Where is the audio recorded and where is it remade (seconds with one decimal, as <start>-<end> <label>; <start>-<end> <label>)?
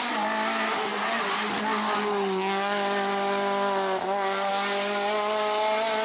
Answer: 0.0-6.0 recorded